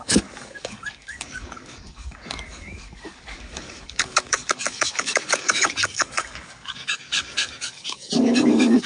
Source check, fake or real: fake